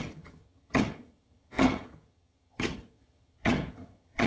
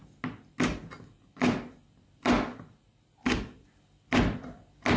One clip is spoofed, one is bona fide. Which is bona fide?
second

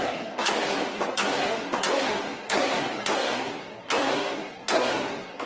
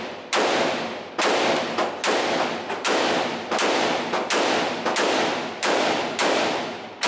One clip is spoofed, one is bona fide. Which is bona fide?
second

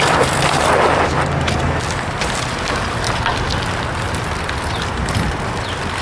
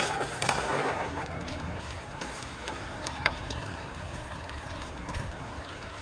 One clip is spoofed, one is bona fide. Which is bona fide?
first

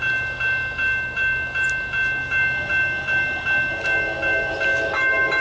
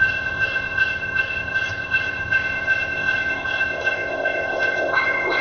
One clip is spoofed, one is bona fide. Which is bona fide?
first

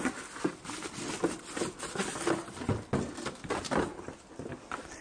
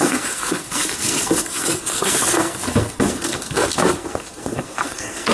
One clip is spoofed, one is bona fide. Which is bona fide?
first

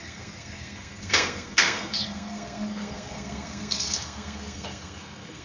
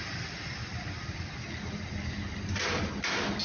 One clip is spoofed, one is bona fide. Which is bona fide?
second